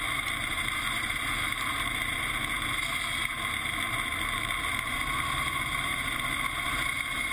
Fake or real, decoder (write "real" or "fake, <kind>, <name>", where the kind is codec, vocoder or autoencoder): fake, vocoder, BigVGAN v2